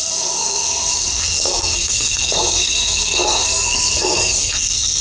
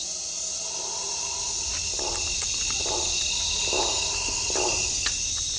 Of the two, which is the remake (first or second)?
first